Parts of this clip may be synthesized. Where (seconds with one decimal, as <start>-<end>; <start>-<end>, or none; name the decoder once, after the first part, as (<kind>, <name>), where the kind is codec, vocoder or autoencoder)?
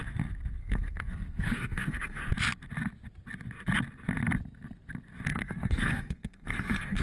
0.6-2.2 (codec, SNAC); 5.3-7.0